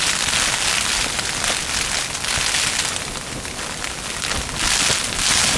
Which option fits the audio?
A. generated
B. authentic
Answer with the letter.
B